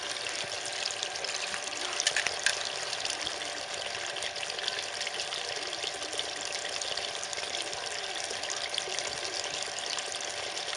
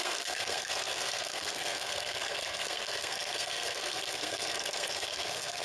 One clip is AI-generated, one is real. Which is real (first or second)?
first